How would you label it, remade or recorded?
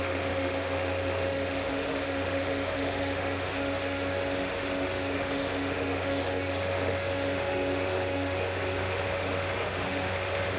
remade